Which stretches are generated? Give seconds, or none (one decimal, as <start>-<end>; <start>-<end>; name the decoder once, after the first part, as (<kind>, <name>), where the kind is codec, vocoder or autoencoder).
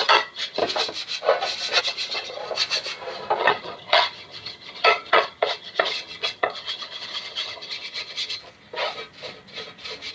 0.0-0.6 (vocoder, HiFi-GAN); 1.8-2.4; 3.4-8.4